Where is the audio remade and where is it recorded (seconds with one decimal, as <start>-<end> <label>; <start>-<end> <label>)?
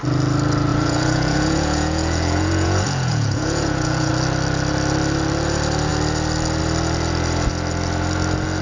0.0-0.7 recorded; 0.7-4.1 remade; 4.1-8.6 recorded